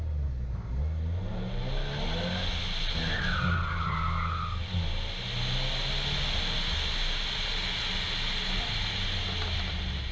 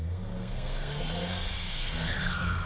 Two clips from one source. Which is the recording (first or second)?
first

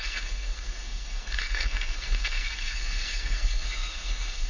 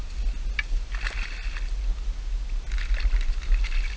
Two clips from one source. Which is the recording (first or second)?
second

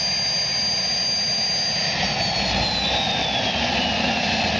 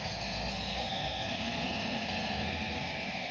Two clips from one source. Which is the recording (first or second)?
first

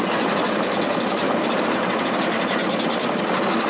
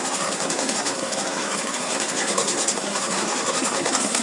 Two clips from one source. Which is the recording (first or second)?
first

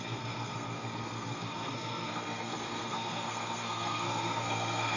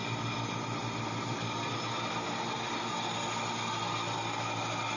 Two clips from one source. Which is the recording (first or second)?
second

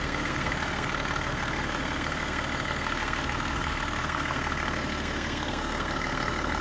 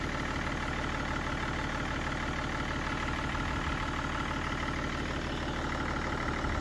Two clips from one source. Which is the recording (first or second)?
second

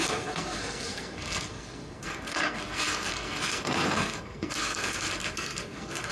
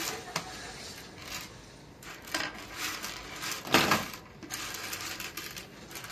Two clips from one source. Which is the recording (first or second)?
second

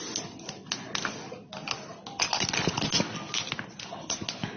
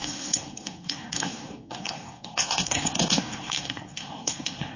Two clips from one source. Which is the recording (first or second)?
first